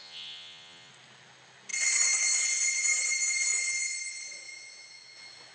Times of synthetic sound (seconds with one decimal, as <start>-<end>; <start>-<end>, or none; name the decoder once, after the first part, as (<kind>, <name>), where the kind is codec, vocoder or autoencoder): 0.0-0.9 (vocoder, Vocos)